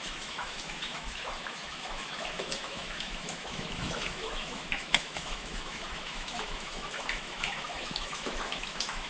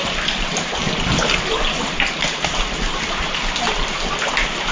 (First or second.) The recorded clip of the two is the second